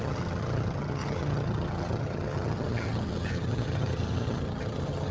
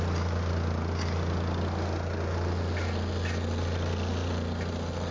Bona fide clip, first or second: second